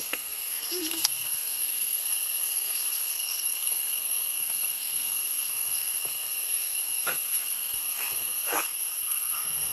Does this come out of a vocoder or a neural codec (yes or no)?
yes